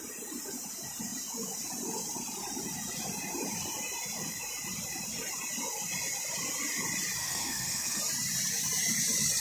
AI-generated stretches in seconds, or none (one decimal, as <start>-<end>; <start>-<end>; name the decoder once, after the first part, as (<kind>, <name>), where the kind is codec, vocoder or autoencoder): 7.2-8.0 (codec, SNAC)